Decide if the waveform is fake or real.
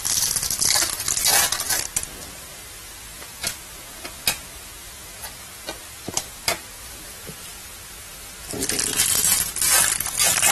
real